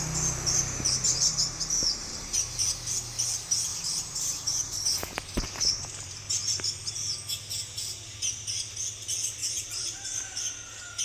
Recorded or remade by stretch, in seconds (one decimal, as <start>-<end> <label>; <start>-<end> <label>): 0.0-2.0 recorded; 2.0-2.7 remade; 2.7-3.7 recorded; 3.7-7.1 remade; 7.1-9.4 recorded; 9.4-10.4 remade; 10.4-11.0 recorded